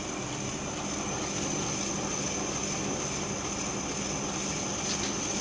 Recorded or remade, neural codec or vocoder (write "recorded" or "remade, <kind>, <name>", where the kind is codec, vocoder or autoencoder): recorded